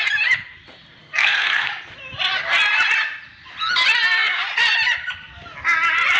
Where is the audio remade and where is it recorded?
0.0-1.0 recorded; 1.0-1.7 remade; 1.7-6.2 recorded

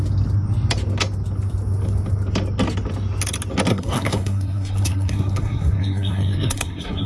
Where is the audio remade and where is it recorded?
0.0-3.7 recorded; 3.7-7.1 remade

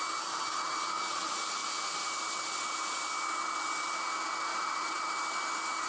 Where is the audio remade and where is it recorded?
0.0-4.5 recorded; 4.5-5.0 remade; 5.0-5.9 recorded

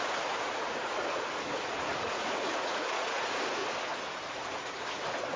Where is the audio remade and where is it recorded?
0.0-3.6 remade; 3.6-4.3 recorded; 4.3-5.4 remade

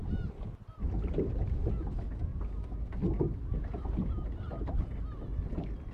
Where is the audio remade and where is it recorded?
0.0-1.7 remade; 1.7-2.3 recorded; 2.3-5.9 remade

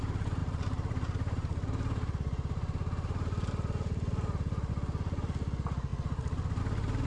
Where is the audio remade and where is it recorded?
0.0-0.4 recorded; 0.4-4.7 remade; 4.7-7.1 recorded

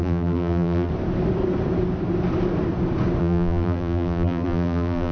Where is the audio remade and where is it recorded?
0.0-0.9 remade; 0.9-3.2 recorded; 3.2-5.1 remade